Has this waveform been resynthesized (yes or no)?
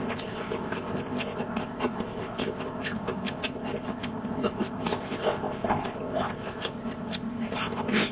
yes